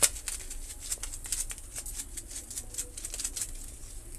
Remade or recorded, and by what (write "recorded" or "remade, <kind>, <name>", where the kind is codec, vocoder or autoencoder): recorded